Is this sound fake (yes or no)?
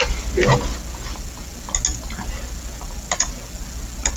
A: no